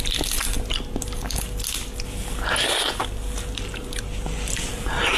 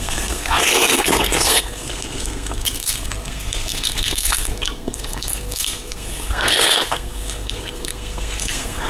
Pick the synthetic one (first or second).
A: second